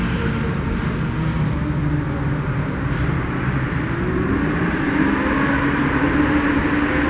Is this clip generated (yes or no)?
no